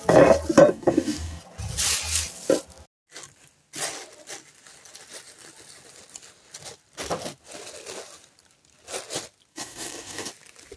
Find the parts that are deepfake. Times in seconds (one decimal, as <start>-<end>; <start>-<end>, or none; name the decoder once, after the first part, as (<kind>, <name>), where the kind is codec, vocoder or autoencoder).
0.7-1.4 (codec, DAC); 9.5-10.3